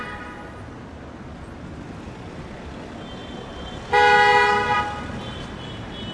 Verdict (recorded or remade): recorded